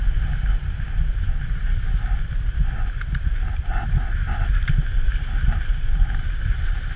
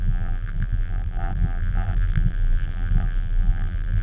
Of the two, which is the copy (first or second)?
second